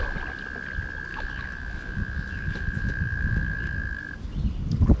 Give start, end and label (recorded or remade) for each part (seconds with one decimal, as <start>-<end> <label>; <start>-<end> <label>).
0.0-1.1 recorded; 1.1-4.0 remade; 4.0-5.0 recorded